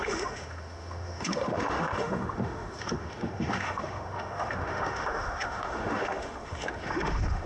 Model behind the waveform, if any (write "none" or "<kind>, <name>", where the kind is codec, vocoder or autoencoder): autoencoder, DAC-VAE